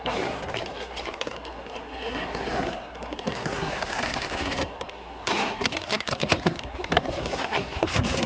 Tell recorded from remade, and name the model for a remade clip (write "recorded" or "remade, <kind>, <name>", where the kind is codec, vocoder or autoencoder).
remade, codec, SNAC